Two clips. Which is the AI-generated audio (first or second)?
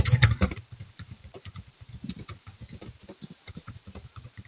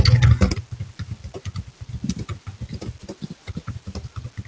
first